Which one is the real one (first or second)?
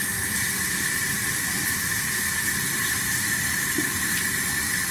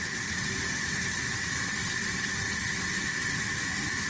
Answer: first